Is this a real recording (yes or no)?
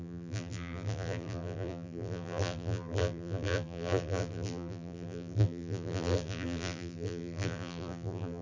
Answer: no